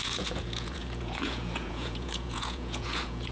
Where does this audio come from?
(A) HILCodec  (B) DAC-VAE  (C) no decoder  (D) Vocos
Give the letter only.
D